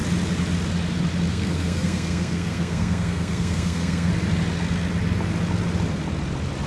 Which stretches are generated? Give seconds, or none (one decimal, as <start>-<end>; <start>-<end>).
1.3-4.1